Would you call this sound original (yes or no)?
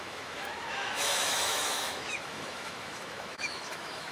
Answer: no